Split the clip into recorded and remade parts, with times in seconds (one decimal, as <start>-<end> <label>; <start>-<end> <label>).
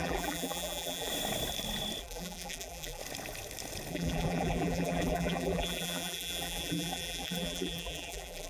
0.0-1.1 remade; 1.1-2.0 recorded; 2.0-3.0 remade; 3.0-3.9 recorded; 3.9-8.5 remade